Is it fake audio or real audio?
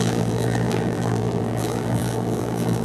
fake